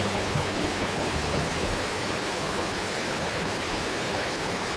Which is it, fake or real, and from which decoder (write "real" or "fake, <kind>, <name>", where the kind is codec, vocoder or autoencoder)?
fake, codec, HILCodec